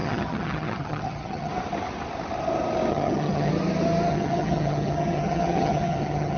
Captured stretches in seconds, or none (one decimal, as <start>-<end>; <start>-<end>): 1.5-2.9; 3.5-4.1